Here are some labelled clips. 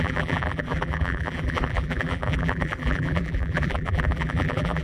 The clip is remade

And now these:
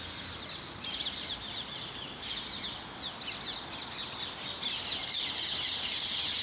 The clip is recorded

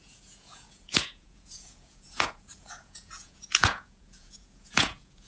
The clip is remade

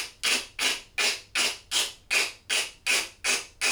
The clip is recorded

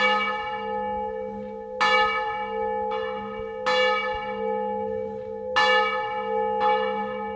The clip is recorded